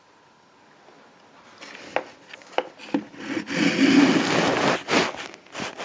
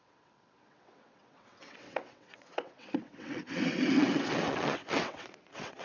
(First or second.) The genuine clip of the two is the first